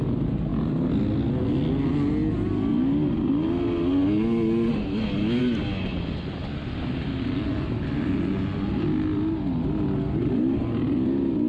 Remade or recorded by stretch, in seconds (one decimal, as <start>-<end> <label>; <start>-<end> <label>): 0.0-11.5 recorded

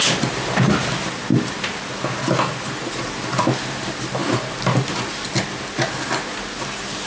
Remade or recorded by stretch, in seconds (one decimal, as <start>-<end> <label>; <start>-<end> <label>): 0.0-7.1 recorded

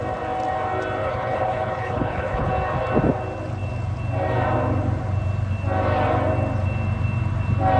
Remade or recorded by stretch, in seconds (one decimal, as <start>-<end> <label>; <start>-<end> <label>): 0.0-1.0 recorded; 1.0-2.5 remade; 2.5-7.8 recorded

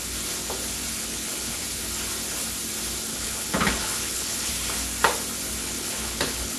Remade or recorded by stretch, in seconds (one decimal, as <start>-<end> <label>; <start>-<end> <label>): 0.0-1.0 recorded; 1.0-1.6 remade; 1.6-3.1 recorded; 3.1-4.5 remade; 4.5-5.6 recorded; 5.6-6.6 remade

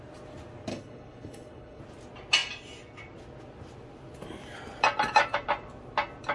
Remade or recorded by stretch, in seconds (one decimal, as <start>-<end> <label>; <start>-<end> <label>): 0.0-0.7 recorded; 0.7-1.8 remade; 1.8-6.3 recorded

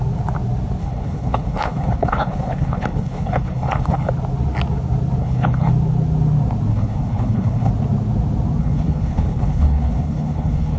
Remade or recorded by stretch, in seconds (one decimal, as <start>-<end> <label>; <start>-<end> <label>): 0.0-0.8 recorded; 0.8-4.1 remade; 4.1-5.2 recorded; 5.2-5.7 remade; 5.7-6.7 recorded; 6.7-7.7 remade; 7.7-8.6 recorded; 8.6-10.8 remade

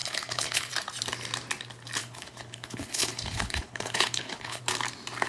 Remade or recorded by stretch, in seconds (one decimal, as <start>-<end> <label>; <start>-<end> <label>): 0.0-0.7 remade; 0.7-2.0 recorded; 2.0-4.6 remade; 4.6-5.3 recorded

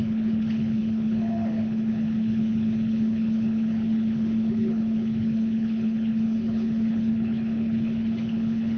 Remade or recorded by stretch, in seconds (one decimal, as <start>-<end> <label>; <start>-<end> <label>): 0.0-8.8 remade